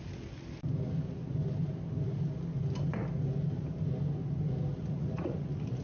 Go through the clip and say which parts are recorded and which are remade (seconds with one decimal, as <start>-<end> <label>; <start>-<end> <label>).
0.0-4.8 recorded; 4.8-5.8 remade